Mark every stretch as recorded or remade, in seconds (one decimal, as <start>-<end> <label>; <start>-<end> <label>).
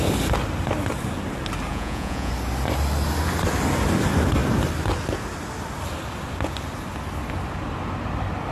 0.0-1.7 recorded; 1.7-2.3 remade; 2.3-8.5 recorded